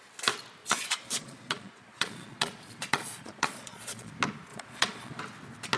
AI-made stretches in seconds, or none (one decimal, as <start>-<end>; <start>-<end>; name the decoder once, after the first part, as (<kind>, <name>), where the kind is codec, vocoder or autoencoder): 0.6-4.1 (vocoder, Vocos); 4.5-5.2

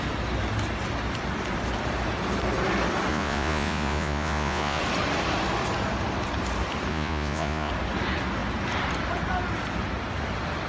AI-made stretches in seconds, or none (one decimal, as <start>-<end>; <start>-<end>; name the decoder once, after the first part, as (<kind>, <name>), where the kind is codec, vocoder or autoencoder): 3.1-4.8 (vocoder, Vocos); 6.9-7.7

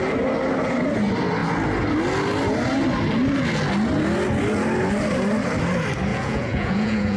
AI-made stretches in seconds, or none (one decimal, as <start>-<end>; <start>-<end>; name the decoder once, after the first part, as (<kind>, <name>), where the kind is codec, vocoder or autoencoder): 6.1-7.2 (vocoder, Vocos)